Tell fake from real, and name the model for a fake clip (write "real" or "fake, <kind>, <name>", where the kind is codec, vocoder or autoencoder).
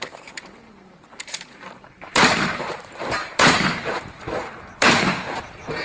fake, vocoder, BigVGAN v2